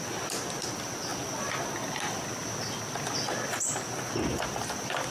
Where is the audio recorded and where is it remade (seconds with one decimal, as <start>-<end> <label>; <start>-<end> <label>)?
0.0-5.1 recorded

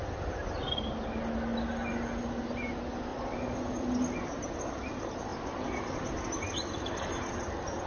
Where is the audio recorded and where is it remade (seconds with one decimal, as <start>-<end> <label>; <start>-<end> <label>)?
0.0-3.1 recorded; 3.1-4.4 remade; 4.4-5.3 recorded; 5.3-7.3 remade; 7.3-7.9 recorded

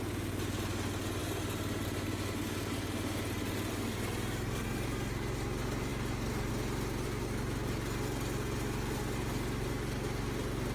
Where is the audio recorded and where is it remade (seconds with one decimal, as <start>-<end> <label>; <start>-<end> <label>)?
0.0-10.7 recorded